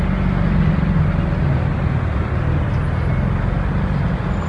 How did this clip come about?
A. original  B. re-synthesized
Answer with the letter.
A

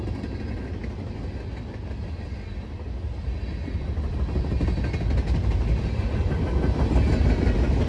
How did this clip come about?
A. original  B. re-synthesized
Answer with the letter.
A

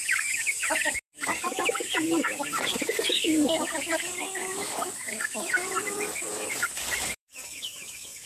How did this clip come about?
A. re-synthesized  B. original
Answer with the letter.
A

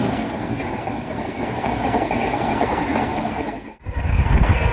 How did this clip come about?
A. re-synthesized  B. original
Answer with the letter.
A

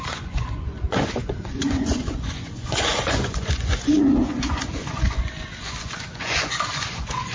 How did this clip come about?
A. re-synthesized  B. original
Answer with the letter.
A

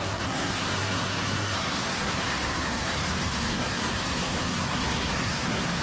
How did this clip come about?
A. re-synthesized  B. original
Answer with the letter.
A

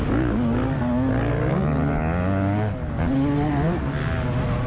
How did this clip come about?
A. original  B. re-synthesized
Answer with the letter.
A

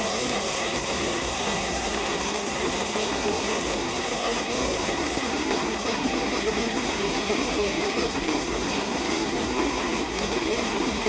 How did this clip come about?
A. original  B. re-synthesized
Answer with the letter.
B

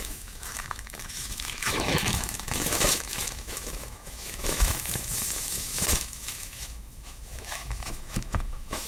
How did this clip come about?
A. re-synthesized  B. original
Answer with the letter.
A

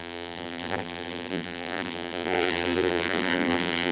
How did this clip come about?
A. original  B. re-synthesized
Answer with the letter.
B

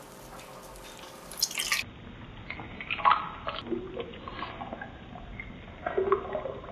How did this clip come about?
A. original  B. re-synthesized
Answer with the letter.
A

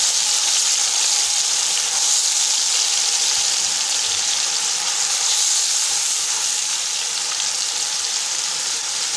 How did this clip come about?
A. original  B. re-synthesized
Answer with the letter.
A